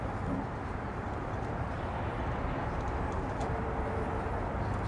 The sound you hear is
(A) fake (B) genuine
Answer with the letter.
B